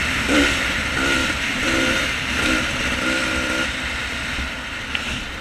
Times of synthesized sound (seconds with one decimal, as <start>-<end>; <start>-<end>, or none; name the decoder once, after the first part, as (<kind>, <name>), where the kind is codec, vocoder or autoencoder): 1.2-2.3 (vocoder, BigVGAN v2)